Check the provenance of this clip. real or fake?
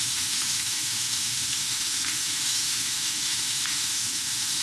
fake